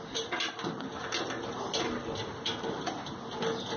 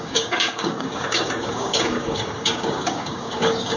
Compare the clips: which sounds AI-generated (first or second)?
second